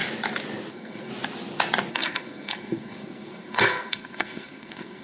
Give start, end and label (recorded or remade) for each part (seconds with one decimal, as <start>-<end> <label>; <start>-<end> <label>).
0.0-0.7 recorded; 0.7-1.1 remade; 1.1-1.9 recorded; 1.9-5.0 remade